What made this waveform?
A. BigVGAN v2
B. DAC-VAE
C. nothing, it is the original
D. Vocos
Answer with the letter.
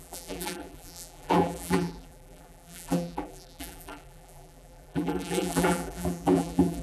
A